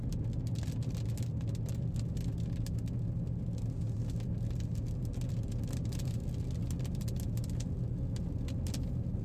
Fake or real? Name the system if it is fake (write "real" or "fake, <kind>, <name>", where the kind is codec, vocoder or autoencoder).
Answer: real